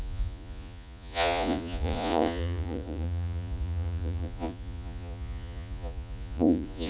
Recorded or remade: remade